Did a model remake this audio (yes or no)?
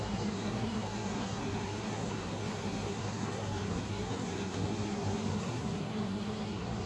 yes